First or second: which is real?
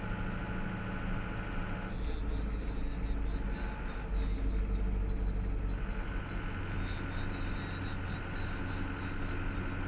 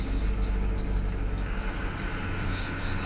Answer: first